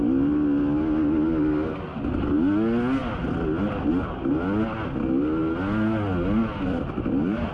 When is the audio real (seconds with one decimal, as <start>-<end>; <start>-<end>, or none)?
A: 0.0-7.5